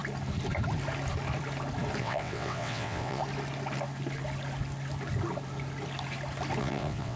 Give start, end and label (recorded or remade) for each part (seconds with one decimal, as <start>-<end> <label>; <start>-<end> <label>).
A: 0.0-2.0 recorded; 2.0-3.2 remade; 3.2-6.6 recorded; 6.6-7.2 remade